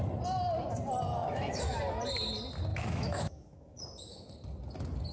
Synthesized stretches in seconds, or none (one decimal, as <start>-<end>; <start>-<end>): 1.2-1.8; 2.7-4.3